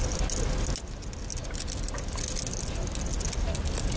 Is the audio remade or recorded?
recorded